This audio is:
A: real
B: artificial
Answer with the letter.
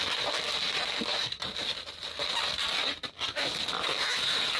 B